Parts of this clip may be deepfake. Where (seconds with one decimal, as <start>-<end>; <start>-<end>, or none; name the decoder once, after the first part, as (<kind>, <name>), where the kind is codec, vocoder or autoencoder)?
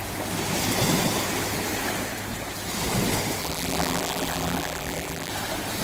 3.4-5.3 (vocoder, BigVGAN v2)